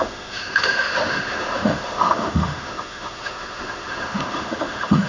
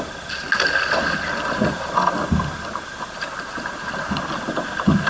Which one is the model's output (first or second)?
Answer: first